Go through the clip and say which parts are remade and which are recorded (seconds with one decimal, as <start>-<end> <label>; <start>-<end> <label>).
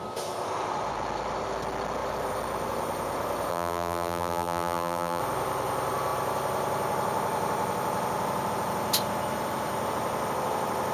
0.0-3.5 recorded; 3.5-5.2 remade; 5.2-10.9 recorded